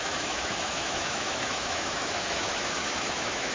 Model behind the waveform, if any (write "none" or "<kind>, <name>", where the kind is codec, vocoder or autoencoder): autoencoder, DAC-VAE